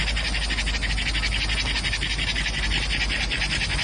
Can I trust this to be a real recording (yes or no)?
yes